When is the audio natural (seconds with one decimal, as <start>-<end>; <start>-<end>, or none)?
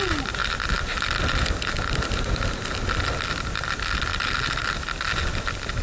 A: 0.0-5.8